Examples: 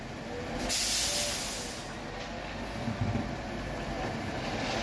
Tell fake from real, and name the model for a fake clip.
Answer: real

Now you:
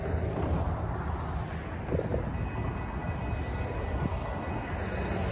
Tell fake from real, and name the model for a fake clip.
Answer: real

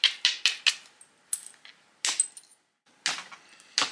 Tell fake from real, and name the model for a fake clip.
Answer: real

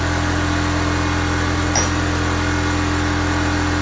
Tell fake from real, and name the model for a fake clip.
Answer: real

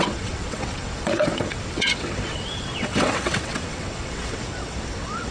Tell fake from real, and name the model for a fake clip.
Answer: fake, vocoder, WaveNeXt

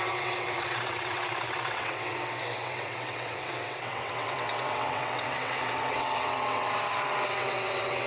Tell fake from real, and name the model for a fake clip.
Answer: fake, vocoder, WaveNeXt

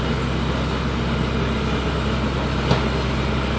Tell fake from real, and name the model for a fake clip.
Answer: real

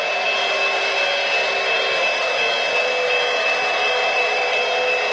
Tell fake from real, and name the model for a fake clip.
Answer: real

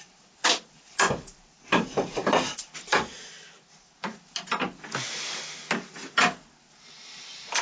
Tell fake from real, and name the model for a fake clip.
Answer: real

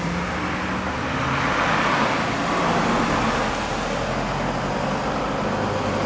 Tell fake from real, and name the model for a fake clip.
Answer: real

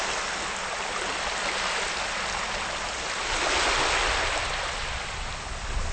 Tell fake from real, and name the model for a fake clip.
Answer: real